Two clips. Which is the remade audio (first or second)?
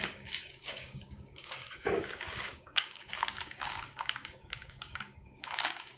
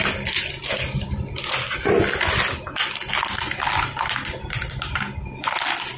first